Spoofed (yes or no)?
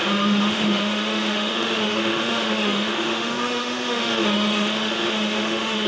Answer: yes